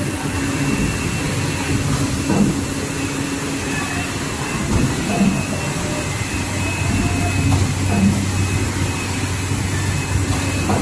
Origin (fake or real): real